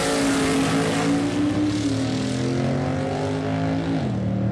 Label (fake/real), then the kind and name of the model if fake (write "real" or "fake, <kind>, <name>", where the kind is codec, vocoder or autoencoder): real